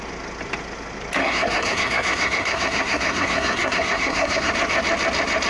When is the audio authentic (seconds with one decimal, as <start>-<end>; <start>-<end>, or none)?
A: 0.0-1.2; 4.5-5.5